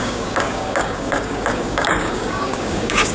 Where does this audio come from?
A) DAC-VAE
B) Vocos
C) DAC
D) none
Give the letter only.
C